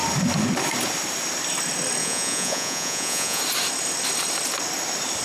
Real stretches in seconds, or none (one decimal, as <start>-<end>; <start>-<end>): 0.0-2.0; 3.4-5.2